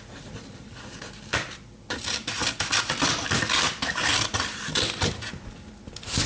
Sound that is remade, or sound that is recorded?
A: remade